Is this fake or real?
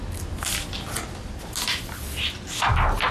real